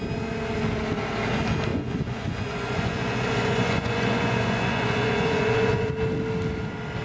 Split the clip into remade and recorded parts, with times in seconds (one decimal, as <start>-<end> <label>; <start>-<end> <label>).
0.0-1.7 recorded; 1.7-5.9 remade; 5.9-7.0 recorded